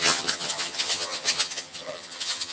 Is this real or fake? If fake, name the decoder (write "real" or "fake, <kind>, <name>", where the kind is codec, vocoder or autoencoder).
fake, vocoder, HiFi-GAN